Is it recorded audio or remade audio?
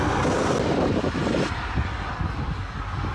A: recorded